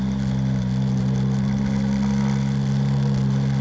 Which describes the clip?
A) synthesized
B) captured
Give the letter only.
B